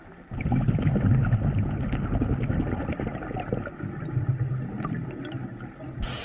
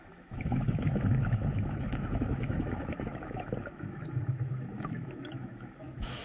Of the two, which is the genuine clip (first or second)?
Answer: first